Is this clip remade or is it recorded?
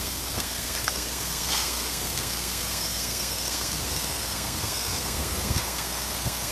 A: remade